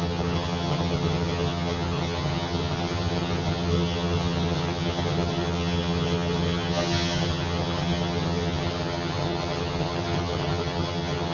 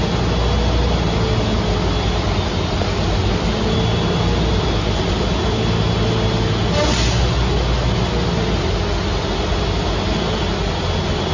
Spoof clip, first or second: first